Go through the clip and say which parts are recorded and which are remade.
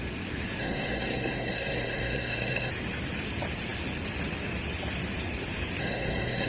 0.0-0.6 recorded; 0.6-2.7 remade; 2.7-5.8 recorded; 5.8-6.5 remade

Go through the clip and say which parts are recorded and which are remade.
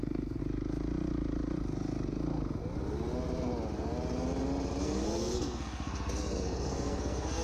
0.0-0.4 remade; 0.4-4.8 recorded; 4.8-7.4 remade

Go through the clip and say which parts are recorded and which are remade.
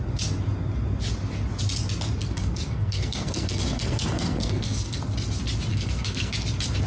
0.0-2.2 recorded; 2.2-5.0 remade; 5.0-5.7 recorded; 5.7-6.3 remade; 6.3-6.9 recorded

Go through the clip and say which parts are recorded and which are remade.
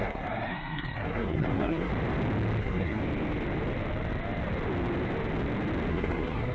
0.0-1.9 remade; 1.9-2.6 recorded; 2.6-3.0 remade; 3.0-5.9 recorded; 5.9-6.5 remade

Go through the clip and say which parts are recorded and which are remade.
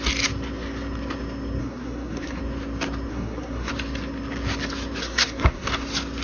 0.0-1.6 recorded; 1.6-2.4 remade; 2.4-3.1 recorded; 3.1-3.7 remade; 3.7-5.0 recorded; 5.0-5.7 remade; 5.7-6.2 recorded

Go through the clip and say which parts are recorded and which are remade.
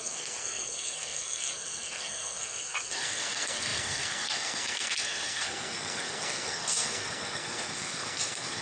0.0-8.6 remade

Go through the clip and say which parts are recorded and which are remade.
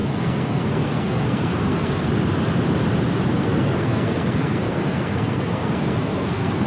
0.0-2.1 remade; 2.1-3.3 recorded; 3.3-6.7 remade